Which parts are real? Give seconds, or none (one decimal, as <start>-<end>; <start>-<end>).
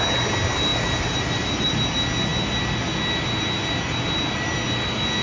0.0-0.7; 1.7-5.2